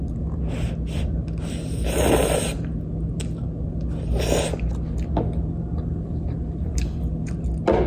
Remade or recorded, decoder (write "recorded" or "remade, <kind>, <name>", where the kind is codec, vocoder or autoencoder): recorded